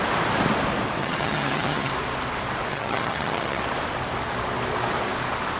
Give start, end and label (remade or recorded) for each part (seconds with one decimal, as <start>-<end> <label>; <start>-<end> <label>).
0.0-1.0 recorded; 1.0-1.9 remade; 1.9-2.7 recorded; 2.7-3.6 remade; 3.6-5.6 recorded